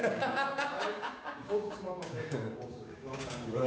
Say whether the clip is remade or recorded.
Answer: remade